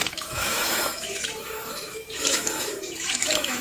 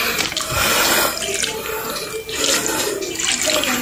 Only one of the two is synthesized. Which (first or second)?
first